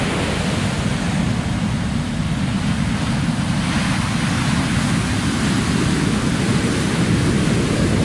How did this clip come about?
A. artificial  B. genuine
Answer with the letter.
B